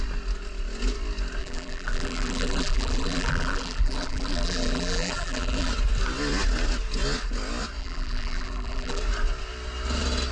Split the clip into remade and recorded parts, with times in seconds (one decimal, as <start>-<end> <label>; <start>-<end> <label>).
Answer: 0.0-1.4 recorded; 1.4-5.7 remade; 5.7-7.8 recorded; 7.8-9.0 remade; 9.0-10.3 recorded